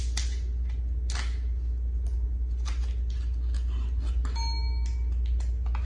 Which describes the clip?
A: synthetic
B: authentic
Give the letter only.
B